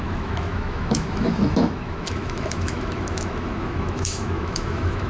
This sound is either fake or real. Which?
fake